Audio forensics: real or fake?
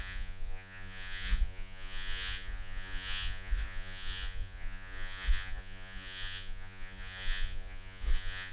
fake